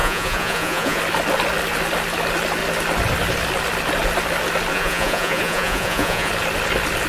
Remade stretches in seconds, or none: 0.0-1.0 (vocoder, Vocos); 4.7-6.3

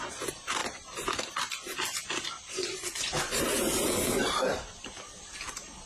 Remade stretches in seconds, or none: 0.0-5.9 (vocoder, BigVGAN v2)

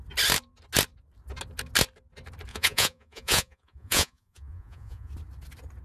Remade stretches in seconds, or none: 2.5-5.1 (vocoder, Vocos)

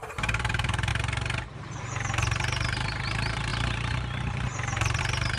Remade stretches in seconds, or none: 0.0-0.9 (vocoder, BigVGAN v2); 1.6-5.4